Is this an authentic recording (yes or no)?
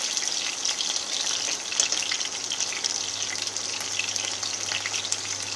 yes